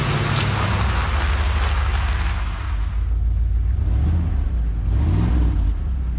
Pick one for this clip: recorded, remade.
recorded